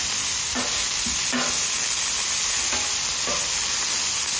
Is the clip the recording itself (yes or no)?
yes